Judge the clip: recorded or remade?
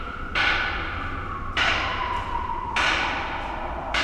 recorded